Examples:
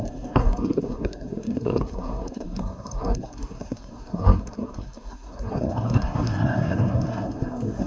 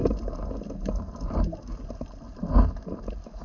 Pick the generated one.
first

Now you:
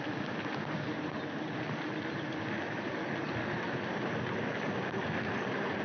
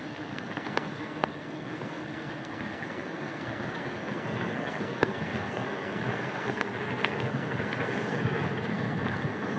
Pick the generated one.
second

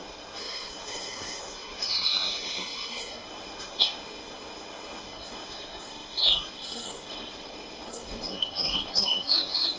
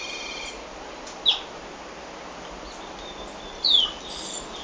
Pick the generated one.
first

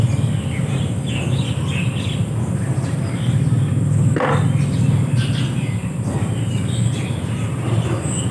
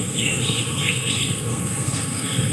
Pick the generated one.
second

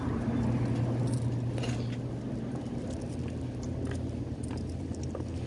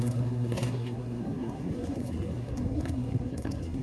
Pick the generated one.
second